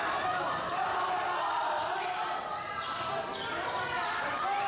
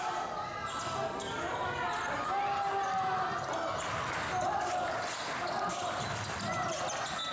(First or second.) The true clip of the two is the second